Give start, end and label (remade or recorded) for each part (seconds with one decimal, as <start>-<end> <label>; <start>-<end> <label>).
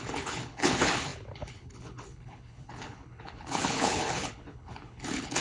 0.0-5.4 remade